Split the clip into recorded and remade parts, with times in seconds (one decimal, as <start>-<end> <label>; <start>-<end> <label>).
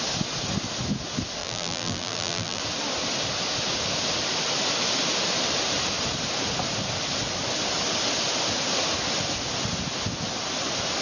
0.0-1.4 recorded; 1.4-2.6 remade; 2.6-11.0 recorded